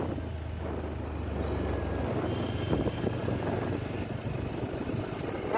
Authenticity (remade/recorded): recorded